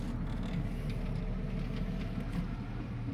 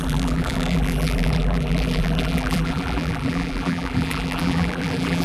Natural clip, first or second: first